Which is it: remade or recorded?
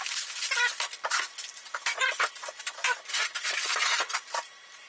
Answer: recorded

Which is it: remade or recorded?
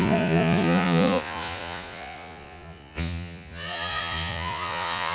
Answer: remade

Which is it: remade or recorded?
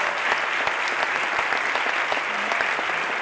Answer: recorded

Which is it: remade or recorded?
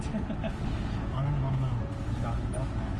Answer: recorded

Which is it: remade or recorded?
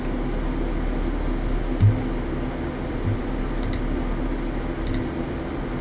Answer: recorded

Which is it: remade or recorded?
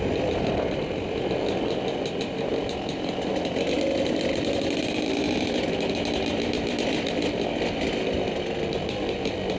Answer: recorded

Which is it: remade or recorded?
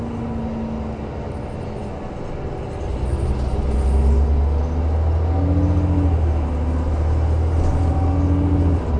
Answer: recorded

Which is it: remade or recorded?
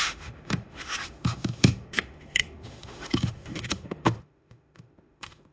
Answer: remade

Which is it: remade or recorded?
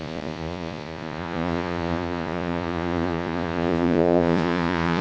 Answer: remade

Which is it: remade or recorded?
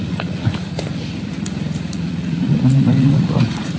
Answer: remade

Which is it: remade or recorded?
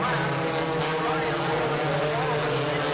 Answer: recorded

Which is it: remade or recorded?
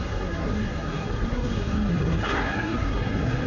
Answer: remade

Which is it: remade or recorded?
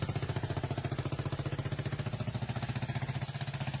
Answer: recorded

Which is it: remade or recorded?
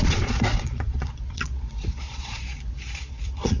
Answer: remade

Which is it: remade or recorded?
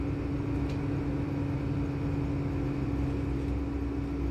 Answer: recorded